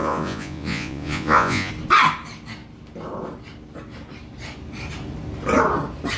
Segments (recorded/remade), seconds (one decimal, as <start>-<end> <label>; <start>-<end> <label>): 0.0-1.7 remade; 1.7-6.2 recorded